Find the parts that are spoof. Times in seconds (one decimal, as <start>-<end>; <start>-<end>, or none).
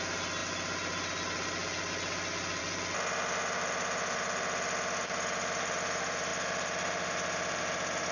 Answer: none